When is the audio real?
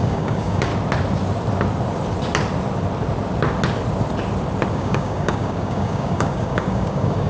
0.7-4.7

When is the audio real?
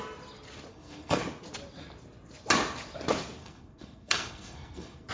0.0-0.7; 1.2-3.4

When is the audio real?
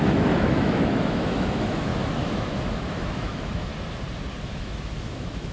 3.7-4.4